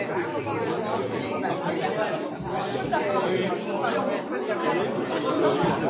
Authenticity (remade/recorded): recorded